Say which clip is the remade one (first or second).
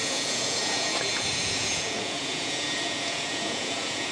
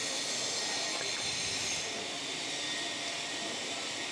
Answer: first